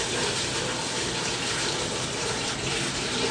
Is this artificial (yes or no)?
no